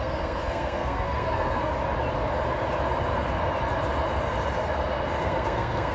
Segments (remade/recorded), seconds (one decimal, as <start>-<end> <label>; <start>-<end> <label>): 0.0-1.7 remade; 1.7-5.2 recorded; 5.2-5.9 remade